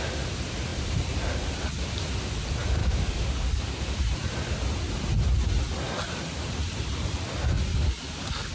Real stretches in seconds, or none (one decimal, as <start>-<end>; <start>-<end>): 0.0-2.8; 3.8-7.7